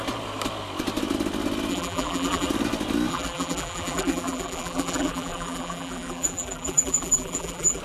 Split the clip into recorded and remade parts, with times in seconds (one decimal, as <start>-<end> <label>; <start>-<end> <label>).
0.0-1.7 recorded; 1.7-2.5 remade; 2.5-3.1 recorded; 3.1-7.8 remade

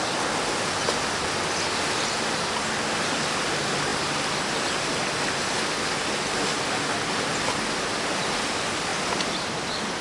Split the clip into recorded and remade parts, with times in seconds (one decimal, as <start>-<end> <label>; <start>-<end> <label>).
0.0-8.9 recorded; 8.9-9.4 remade; 9.4-10.0 recorded

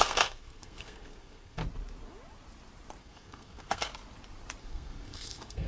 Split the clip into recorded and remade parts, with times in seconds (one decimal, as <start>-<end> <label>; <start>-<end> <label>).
0.0-1.6 remade; 1.6-3.0 recorded; 3.0-3.9 remade; 3.9-4.6 recorded; 4.6-5.7 remade

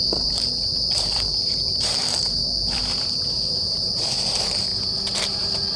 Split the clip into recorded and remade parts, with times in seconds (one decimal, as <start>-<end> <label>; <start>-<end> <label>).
0.0-4.7 remade; 4.7-5.3 recorded; 5.3-5.8 remade

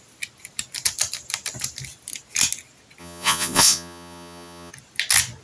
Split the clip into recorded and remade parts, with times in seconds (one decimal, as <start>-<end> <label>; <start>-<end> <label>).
0.0-3.0 recorded; 3.0-4.7 remade; 4.7-5.4 recorded

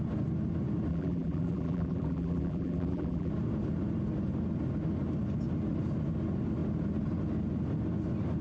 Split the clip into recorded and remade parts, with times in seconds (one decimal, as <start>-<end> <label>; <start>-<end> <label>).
0.0-0.9 recorded; 0.9-3.3 remade; 3.3-8.4 recorded

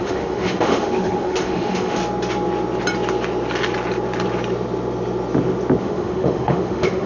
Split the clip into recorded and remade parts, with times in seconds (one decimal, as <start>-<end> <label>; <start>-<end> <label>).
0.0-2.0 remade; 2.0-5.8 recorded; 5.8-7.1 remade